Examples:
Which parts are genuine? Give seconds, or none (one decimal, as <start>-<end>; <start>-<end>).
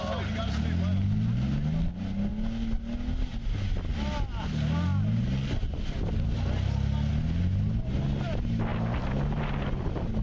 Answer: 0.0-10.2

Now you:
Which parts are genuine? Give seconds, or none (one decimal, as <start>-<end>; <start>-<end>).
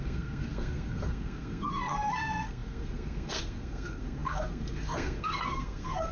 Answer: none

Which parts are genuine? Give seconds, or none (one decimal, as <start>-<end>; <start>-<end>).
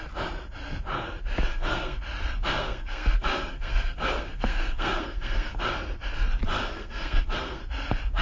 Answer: 0.0-1.5; 2.0-2.6; 5.6-6.6; 7.6-8.2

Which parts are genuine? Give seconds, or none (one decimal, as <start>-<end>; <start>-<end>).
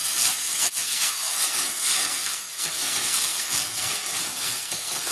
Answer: none